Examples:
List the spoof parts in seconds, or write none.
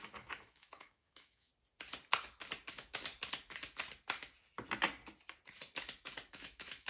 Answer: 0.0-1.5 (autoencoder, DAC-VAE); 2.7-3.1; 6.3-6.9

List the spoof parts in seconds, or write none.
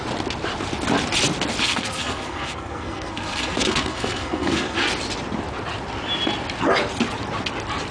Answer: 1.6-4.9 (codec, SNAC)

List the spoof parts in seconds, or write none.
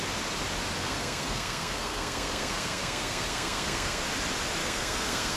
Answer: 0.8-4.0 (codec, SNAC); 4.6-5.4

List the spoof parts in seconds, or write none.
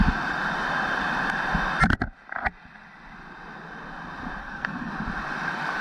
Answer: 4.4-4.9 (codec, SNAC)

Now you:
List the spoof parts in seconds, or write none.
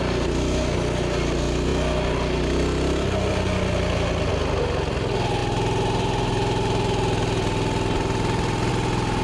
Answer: none